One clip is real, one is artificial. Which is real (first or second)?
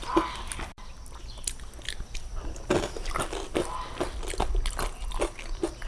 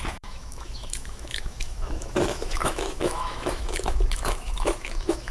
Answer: first